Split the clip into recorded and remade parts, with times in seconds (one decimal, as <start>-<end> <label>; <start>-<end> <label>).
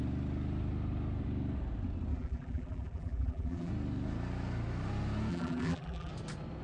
0.0-2.1 recorded; 2.1-3.7 remade; 3.7-5.3 recorded; 5.3-6.1 remade; 6.1-6.6 recorded